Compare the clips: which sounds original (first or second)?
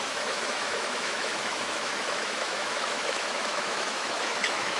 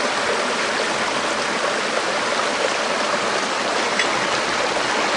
second